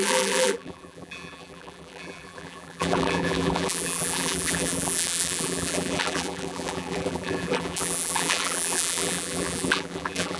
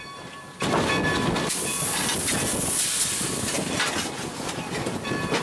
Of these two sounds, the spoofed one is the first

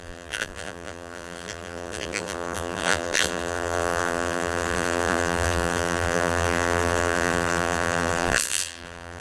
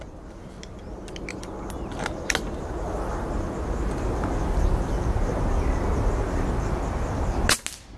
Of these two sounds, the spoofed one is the first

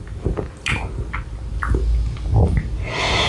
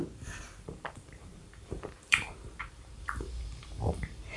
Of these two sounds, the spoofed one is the second